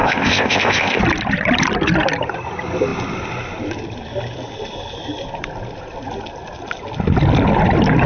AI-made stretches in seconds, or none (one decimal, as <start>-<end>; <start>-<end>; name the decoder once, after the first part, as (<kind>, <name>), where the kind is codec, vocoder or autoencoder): 0.0-1.0 (codec, ZipCodec)